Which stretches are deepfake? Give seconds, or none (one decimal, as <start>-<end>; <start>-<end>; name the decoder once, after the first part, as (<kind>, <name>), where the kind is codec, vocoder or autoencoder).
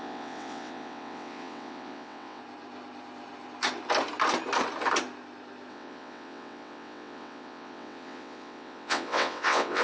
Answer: 0.0-2.4 (vocoder, WaveNeXt); 5.7-9.8